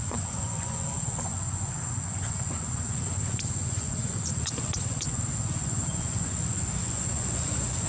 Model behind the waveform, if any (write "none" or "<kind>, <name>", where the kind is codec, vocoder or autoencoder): vocoder, Vocos